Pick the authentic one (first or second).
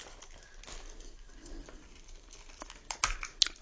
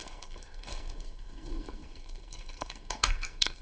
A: first